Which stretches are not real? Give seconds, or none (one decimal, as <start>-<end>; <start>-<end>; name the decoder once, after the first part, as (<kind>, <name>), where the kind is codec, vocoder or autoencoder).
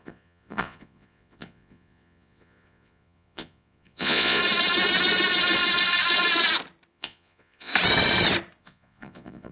0.0-4.4 (vocoder, Vocos); 6.9-7.7; 8.6-9.5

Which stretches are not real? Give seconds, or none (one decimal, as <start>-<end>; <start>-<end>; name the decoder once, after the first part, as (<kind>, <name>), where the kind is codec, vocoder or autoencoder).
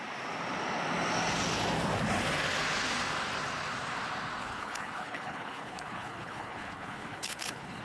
4.4-7.8 (codec, HILCodec)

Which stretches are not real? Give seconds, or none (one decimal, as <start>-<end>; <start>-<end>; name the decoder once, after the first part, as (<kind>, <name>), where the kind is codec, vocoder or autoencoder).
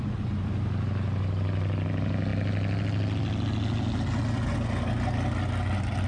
none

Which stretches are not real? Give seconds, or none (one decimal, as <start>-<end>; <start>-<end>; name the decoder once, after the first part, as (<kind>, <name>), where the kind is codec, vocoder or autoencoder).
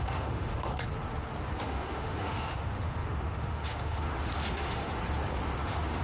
0.0-0.7 (autoencoder, DAC-VAE); 1.6-5.0; 5.6-6.0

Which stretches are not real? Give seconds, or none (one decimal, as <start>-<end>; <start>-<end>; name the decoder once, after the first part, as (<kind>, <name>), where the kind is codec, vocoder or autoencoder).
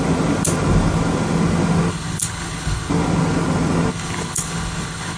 1.9-2.9 (codec, HILCodec); 3.9-5.2